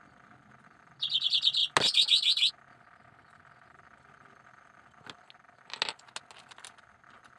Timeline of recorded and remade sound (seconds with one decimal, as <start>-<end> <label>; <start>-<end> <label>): 0.0-7.4 recorded